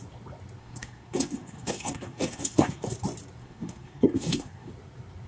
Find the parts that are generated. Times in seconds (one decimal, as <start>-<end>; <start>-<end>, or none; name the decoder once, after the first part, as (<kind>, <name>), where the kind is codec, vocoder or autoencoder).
0.6-2.9 (codec, SNAC); 3.4-4.7